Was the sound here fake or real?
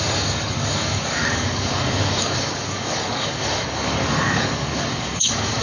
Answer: fake